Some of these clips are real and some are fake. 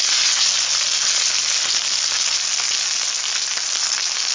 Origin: real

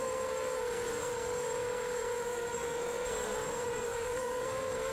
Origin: fake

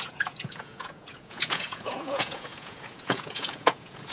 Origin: fake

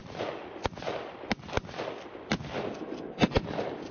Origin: real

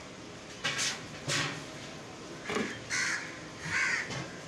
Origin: real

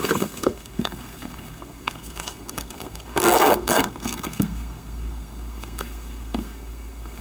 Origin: fake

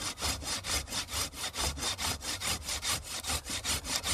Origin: fake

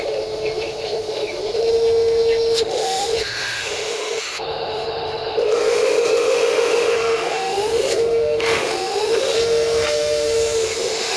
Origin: fake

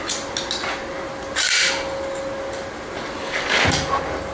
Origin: real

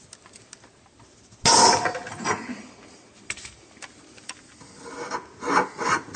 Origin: real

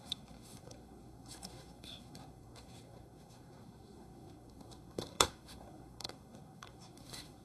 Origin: fake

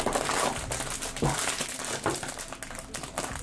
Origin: real